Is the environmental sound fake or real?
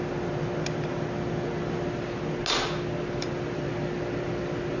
real